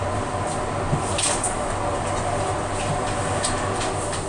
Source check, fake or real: real